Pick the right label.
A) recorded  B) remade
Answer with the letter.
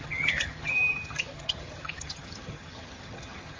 B